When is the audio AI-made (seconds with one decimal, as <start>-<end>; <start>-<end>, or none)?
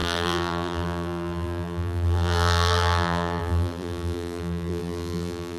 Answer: 0.0-5.6